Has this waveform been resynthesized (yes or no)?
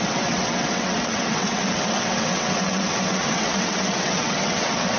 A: yes